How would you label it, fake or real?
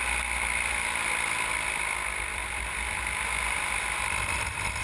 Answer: fake